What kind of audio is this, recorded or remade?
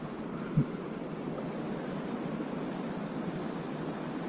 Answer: recorded